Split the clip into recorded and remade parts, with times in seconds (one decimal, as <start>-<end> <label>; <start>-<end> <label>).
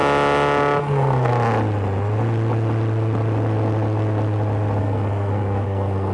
0.0-0.8 recorded; 0.8-1.3 remade; 1.3-4.8 recorded; 4.8-6.1 remade